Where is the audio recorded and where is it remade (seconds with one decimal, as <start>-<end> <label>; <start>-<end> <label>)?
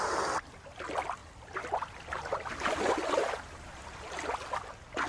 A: 0.0-1.2 recorded; 1.2-4.3 remade; 4.3-5.1 recorded